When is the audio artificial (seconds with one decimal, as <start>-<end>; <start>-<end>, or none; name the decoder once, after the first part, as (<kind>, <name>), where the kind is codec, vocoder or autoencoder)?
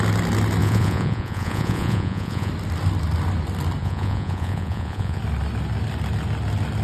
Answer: 0.6-2.5 (vocoder, Vocos); 3.8-5.2